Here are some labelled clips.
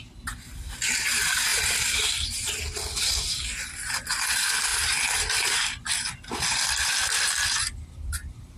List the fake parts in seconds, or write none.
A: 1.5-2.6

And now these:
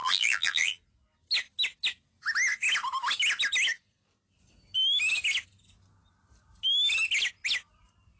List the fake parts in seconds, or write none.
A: 0.0-0.8

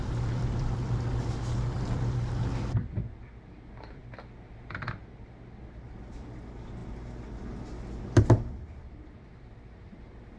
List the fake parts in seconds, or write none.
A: 0.0-4.0; 5.8-6.8; 8.0-10.4

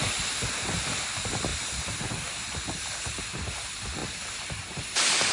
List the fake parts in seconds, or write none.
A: 0.0-1.5; 3.2-5.3

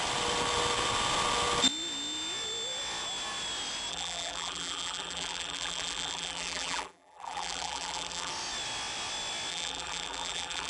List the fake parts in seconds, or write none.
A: 3.9-8.3; 9.5-10.7

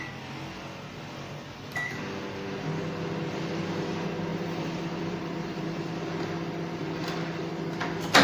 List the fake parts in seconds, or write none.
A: 4.3-5.9; 6.8-7.5

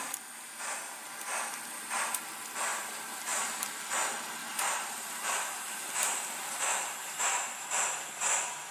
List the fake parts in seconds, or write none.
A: 2.7-3.9; 4.4-7.8